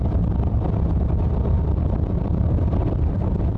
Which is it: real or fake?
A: fake